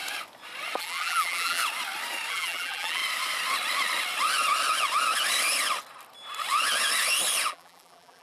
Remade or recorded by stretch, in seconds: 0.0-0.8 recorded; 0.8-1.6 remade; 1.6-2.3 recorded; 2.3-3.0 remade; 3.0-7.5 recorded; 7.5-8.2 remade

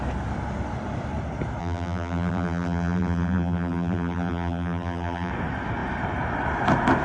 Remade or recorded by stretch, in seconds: 0.0-1.6 recorded; 1.6-5.3 remade; 5.3-7.0 recorded

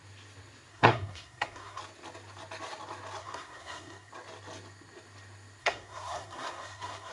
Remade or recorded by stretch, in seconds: 0.0-0.7 recorded; 0.7-1.8 remade; 1.8-3.2 recorded; 3.2-4.1 remade; 4.1-5.6 recorded; 5.6-7.1 remade